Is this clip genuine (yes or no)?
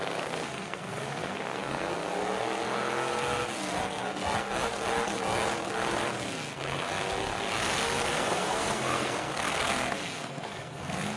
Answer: no